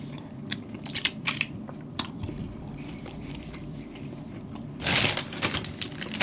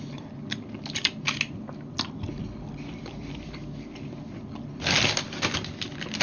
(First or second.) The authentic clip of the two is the second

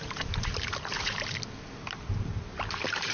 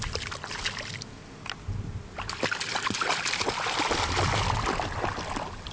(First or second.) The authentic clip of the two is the second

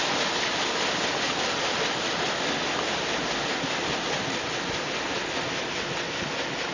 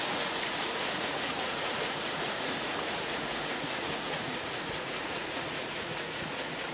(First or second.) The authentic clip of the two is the first